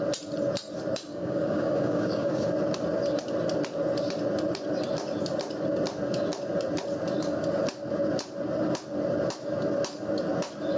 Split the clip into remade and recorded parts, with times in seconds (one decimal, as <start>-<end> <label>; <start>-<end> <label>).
0.0-1.1 recorded; 1.1-2.5 remade; 2.5-10.8 recorded